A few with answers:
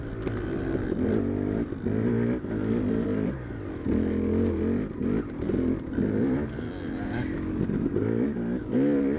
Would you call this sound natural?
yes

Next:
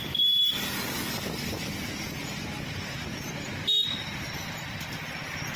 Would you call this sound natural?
yes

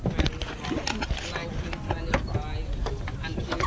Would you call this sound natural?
yes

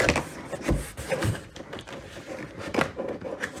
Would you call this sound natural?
yes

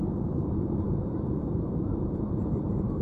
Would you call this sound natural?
no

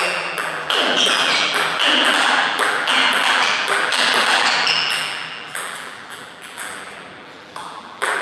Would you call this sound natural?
no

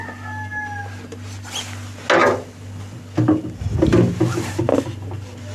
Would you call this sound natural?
yes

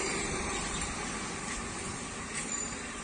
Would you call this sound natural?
no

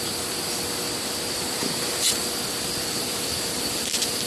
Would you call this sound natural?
no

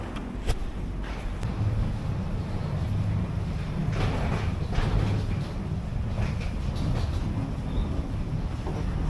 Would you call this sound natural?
yes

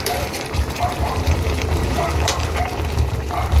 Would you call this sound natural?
no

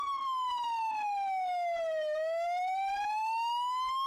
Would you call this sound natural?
yes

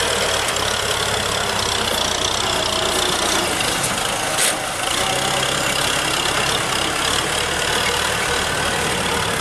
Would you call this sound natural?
yes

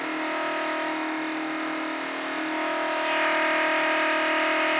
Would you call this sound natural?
yes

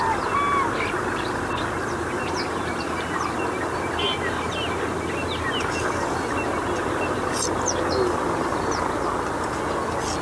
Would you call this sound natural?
yes